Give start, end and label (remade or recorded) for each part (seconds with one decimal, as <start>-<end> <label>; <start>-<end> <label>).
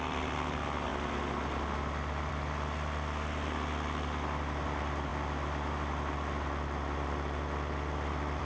0.0-8.4 recorded